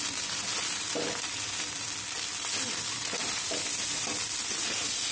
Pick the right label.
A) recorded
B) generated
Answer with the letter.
A